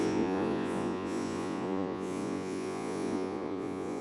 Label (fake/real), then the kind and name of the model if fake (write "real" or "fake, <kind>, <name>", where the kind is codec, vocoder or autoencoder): fake, vocoder, Vocos